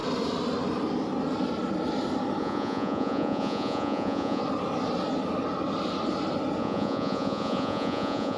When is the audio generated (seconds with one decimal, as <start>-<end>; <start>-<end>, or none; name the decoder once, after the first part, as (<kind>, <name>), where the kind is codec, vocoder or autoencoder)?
2.4-4.4 (vocoder, Vocos); 6.6-8.4